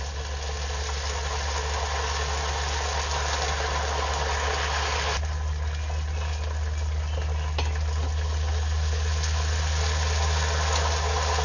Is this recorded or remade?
recorded